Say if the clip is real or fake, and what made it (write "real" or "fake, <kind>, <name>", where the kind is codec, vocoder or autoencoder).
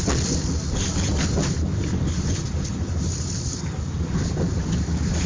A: real